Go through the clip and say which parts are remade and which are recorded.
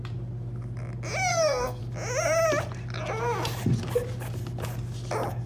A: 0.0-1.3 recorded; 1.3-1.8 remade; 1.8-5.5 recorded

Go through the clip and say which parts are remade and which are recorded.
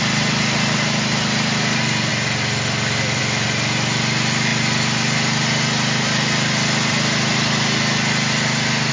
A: 0.0-8.9 recorded